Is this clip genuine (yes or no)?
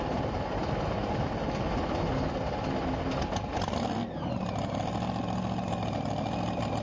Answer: yes